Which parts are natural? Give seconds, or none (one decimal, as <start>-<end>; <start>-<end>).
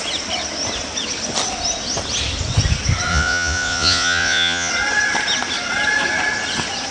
0.0-3.1; 4.7-6.9